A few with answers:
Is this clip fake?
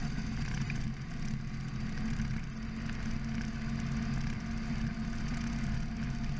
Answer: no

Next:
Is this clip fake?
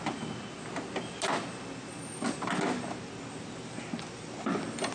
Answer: no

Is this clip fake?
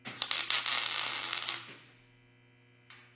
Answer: no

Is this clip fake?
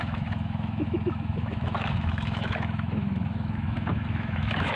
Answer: yes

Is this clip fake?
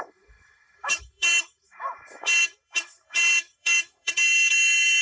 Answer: yes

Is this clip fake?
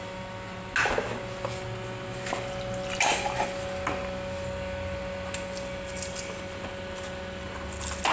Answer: no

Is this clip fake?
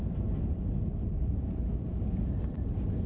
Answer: no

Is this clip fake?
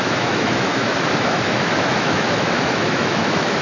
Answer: yes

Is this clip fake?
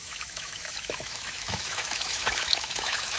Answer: yes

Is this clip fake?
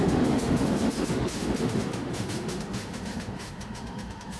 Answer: yes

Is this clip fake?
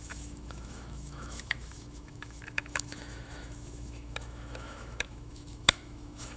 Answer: yes